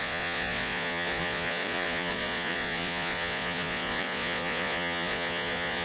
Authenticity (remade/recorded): remade